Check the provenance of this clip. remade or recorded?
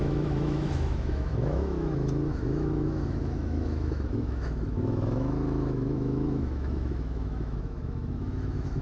remade